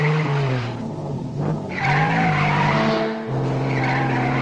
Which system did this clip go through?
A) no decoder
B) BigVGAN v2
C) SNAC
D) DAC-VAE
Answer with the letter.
B